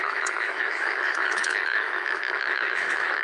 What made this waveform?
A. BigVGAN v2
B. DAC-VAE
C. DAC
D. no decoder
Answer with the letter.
B